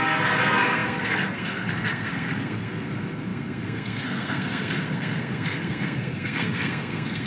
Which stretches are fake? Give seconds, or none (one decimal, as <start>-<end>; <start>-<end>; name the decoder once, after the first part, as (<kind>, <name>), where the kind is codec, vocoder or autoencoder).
0.0-7.3 (codec, SNAC)